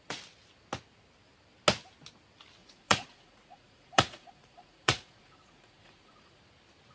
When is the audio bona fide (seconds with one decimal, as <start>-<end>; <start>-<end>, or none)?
0.0-2.6; 6.4-6.9